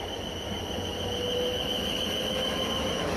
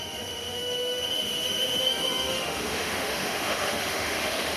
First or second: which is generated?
second